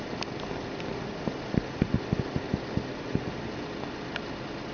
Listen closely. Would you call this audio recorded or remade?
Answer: recorded